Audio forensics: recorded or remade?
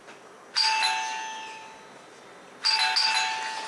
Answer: recorded